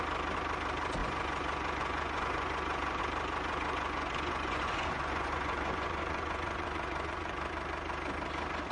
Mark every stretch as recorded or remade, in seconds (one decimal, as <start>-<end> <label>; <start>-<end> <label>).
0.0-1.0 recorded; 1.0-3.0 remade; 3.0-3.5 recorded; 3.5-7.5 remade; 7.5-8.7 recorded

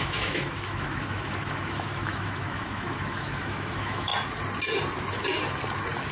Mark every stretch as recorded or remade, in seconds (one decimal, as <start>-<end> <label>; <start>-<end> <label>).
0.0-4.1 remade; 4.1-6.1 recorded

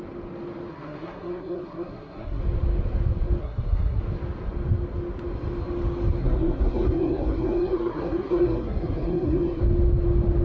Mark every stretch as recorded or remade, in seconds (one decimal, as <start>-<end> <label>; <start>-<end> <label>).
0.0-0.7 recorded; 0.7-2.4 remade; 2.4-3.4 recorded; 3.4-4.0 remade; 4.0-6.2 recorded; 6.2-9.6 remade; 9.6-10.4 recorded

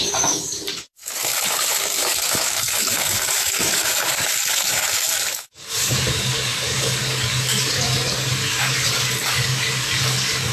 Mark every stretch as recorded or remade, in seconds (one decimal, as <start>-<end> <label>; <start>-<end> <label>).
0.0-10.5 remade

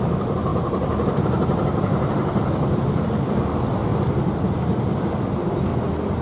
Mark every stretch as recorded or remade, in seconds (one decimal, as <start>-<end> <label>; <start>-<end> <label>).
0.0-3.9 remade; 3.9-5.1 recorded; 5.1-5.7 remade; 5.7-6.2 recorded

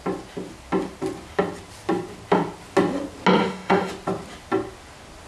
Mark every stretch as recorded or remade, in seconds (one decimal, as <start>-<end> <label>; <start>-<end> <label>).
0.0-3.4 recorded; 3.4-3.9 remade; 3.9-5.3 recorded